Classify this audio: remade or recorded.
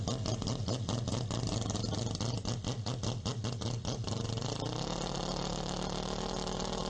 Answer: recorded